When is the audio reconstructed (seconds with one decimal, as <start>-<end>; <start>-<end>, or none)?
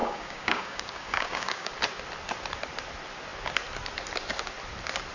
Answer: 0.0-1.7